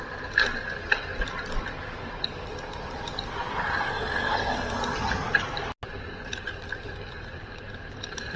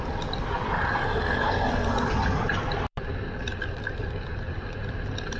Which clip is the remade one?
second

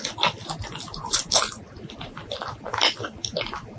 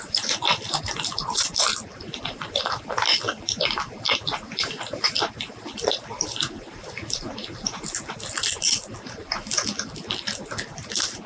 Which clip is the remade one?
second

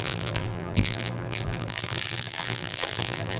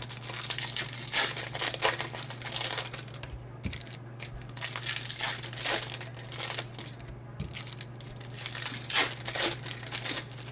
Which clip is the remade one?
first